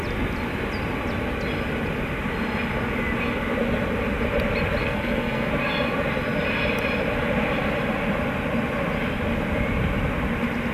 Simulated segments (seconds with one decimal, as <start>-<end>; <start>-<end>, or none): 4.8-5.5